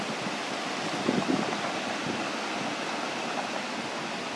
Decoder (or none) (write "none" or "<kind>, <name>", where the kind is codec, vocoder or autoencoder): none